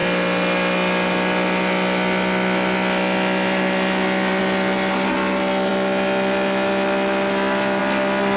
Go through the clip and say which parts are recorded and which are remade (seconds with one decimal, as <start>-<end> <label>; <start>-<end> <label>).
0.0-8.4 recorded